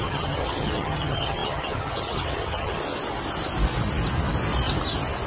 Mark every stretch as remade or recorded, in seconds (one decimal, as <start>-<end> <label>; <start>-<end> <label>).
0.0-2.8 remade; 2.8-5.3 recorded